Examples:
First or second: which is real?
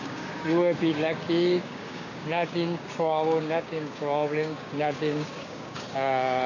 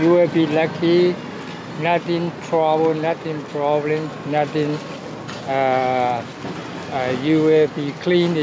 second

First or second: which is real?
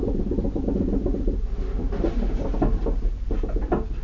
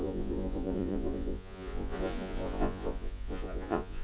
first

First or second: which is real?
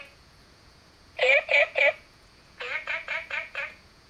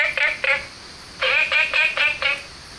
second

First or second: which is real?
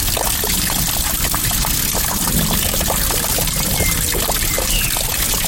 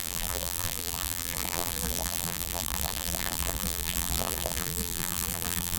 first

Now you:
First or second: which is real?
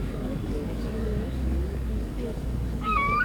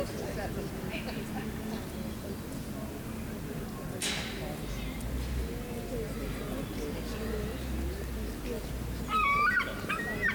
second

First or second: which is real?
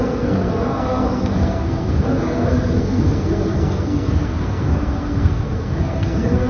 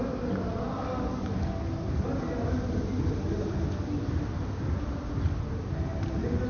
second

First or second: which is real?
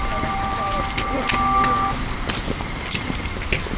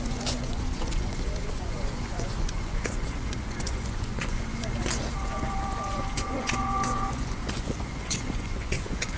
first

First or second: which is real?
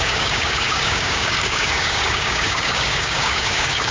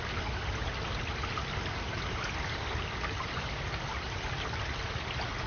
second